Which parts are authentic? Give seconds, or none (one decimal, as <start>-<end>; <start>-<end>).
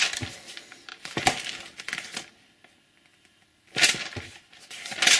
0.0-3.1; 3.9-5.2